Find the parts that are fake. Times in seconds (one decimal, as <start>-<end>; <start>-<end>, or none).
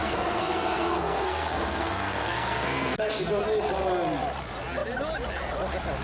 0.0-3.4